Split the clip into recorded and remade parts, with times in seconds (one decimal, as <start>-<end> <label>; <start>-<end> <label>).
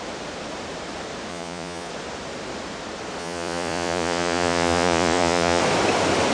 0.0-1.3 recorded; 1.3-1.9 remade; 1.9-3.2 recorded; 3.2-5.6 remade; 5.6-6.3 recorded